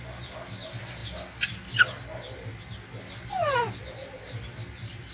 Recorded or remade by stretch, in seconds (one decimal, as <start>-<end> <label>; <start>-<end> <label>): 0.0-5.1 recorded